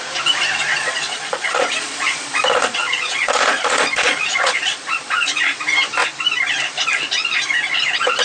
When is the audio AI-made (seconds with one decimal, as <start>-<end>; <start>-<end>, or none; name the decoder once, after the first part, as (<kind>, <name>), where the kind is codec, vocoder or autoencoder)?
0.7-5.6 (vocoder, Vocos)